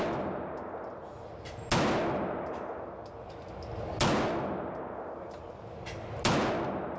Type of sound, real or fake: real